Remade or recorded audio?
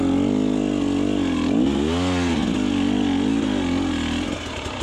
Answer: recorded